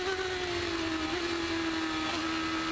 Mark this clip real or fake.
real